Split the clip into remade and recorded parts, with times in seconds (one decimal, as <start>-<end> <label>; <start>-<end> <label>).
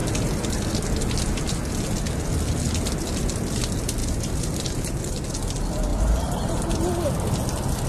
0.0-4.0 recorded; 4.0-5.0 remade; 5.0-5.9 recorded; 5.9-7.1 remade; 7.1-7.9 recorded